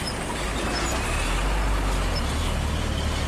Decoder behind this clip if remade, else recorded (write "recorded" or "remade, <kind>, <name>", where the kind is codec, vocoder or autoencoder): recorded